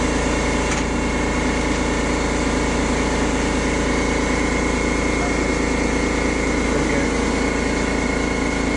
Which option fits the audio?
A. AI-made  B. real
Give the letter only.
B